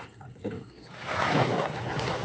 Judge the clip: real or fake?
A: fake